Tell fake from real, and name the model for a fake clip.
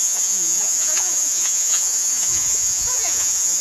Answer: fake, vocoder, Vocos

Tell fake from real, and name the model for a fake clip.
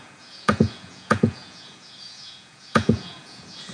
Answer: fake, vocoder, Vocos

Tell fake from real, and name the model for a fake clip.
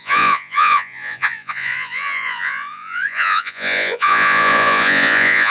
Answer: fake, vocoder, Vocos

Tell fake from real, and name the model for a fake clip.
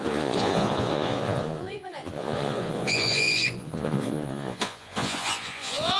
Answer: fake, vocoder, Vocos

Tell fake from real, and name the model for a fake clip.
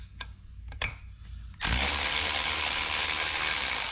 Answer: real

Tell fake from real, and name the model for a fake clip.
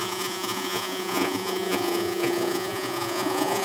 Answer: fake, vocoder, Vocos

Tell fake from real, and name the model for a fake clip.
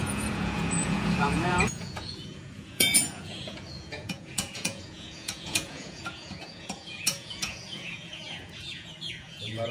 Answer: fake, vocoder, Vocos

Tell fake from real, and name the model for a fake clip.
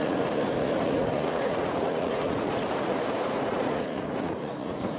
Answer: fake, vocoder, Vocos